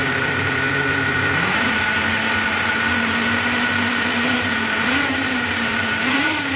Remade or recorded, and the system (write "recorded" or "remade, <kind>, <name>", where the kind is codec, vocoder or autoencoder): remade, vocoder, BigVGAN v2